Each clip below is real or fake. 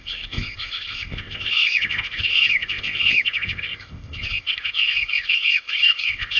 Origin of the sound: fake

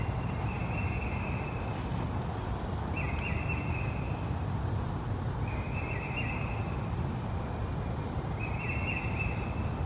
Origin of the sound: real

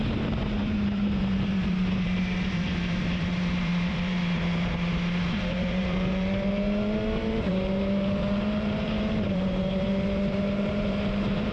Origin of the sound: fake